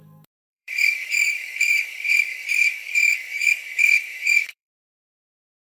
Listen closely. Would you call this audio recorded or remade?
remade